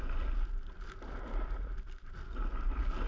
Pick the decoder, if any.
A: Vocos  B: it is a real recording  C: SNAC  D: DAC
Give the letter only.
B